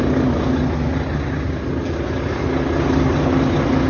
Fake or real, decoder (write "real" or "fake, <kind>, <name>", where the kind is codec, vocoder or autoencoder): real